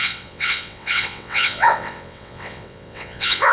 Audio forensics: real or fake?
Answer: fake